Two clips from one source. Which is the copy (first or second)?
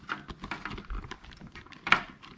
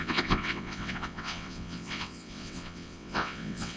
second